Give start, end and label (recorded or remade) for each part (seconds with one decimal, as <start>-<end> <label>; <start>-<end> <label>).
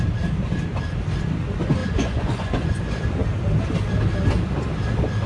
0.0-1.8 recorded; 1.8-2.8 remade; 2.8-5.3 recorded